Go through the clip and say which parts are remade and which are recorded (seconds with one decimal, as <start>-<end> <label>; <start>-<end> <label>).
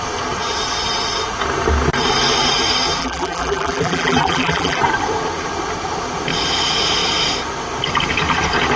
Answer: 0.0-3.0 recorded; 3.0-4.8 remade; 4.8-8.8 recorded